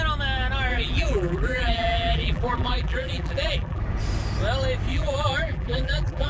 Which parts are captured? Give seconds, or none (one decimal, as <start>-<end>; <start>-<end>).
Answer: 0.0-0.7; 3.8-4.9